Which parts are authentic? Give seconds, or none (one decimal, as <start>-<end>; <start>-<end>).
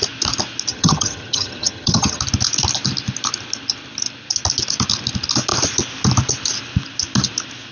0.0-0.7; 2.2-7.7